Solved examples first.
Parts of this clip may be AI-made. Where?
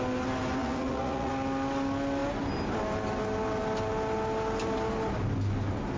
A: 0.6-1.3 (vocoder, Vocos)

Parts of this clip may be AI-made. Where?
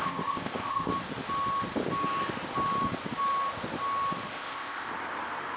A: 0.0-0.9 (codec, ZipCodec); 4.3-4.9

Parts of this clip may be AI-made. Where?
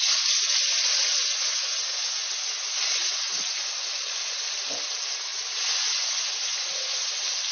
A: 1.2-2.7 (vocoder, Vocos); 5.3-7.1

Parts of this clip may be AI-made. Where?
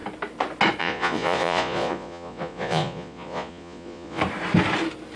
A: 0.8-4.2 (vocoder, Vocos)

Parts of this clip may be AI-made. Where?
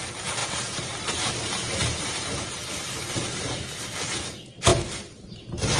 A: none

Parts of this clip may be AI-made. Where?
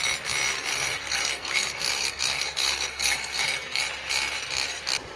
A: 0.7-3.8 (codec, SNAC)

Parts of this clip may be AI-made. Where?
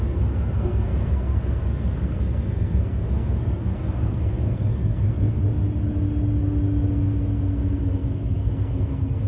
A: 0.0-5.4 (codec, SNAC); 6.9-9.3